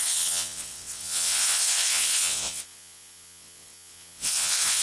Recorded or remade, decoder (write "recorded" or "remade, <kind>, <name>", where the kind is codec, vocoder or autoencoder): remade, vocoder, WaveNeXt